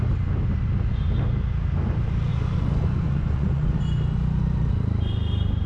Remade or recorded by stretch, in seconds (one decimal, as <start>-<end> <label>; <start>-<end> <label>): 0.0-2.3 recorded; 2.3-3.8 remade; 3.8-5.7 recorded